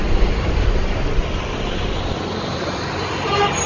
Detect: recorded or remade recorded